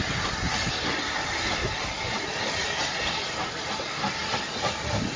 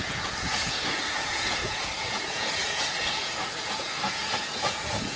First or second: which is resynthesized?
second